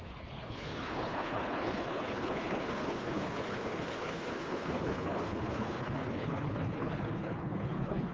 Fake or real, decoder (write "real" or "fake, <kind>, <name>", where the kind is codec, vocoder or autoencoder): fake, codec, HILCodec